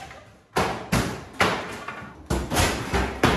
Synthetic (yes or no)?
no